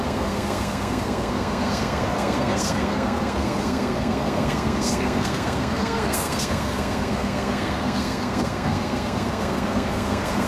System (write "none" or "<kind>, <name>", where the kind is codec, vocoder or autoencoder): codec, SNAC